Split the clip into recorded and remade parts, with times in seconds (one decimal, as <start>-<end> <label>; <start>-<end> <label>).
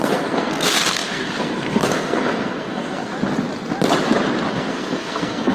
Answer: 0.0-3.1 remade; 3.1-4.5 recorded; 4.5-5.5 remade